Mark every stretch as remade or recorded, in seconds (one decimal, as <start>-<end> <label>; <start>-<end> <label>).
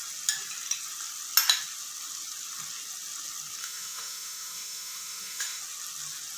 0.0-3.6 recorded; 3.6-5.6 remade; 5.6-6.4 recorded